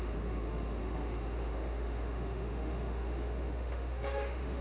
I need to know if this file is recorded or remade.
remade